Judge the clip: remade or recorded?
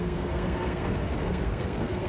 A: remade